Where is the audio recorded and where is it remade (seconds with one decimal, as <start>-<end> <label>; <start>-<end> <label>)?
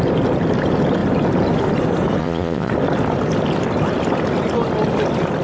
0.0-2.2 recorded; 2.2-2.7 remade; 2.7-5.4 recorded